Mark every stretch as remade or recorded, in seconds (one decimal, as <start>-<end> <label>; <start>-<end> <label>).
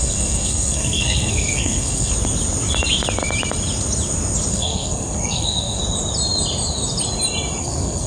0.0-2.1 remade; 2.1-4.5 recorded; 4.5-5.8 remade; 5.8-7.6 recorded; 7.6-8.1 remade